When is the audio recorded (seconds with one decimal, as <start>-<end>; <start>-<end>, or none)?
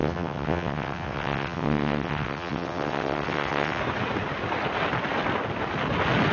3.8-6.3